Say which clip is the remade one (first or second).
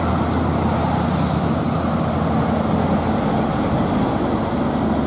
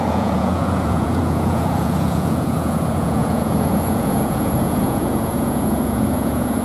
second